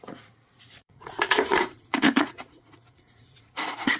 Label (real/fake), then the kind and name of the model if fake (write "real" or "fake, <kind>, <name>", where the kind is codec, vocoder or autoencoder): fake, vocoder, Vocos